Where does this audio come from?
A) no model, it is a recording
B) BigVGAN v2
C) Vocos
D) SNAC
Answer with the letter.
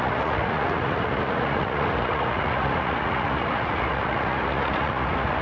C